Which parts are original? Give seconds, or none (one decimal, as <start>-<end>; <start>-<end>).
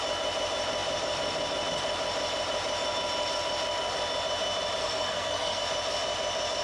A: 0.0-4.8; 5.6-6.6